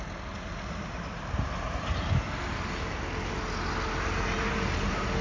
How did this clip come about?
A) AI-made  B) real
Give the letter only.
B